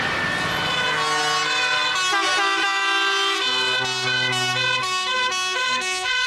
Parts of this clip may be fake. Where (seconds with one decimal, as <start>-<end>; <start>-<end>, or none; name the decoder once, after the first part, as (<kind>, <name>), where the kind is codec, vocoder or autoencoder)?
4.8-6.3 (codec, SNAC)